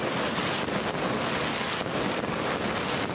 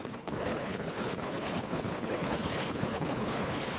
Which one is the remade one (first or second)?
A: second